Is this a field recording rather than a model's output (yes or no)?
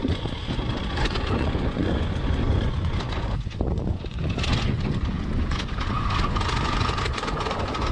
no